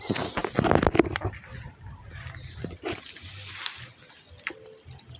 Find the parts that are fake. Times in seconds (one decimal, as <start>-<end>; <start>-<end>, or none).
none